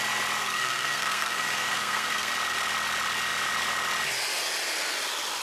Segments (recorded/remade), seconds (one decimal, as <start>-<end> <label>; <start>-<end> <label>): 0.0-0.4 recorded; 0.4-2.3 remade; 2.3-5.4 recorded